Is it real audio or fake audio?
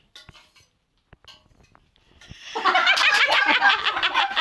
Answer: real